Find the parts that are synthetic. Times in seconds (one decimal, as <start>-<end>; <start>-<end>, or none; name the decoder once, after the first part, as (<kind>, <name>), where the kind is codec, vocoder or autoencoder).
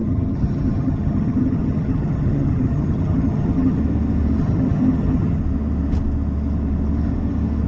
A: 0.0-3.8 (vocoder, HiFi-GAN); 4.4-5.4